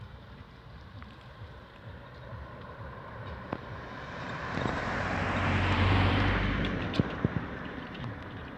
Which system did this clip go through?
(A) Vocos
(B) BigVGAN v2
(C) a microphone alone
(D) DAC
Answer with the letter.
B